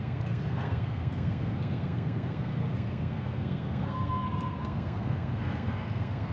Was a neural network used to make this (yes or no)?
yes